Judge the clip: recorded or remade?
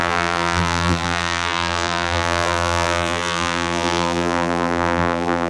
remade